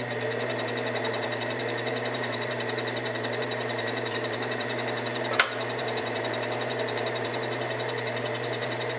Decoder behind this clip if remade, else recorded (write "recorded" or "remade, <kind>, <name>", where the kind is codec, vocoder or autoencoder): remade, vocoder, BigVGAN v2